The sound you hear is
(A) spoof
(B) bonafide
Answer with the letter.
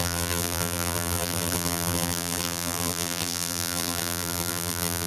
A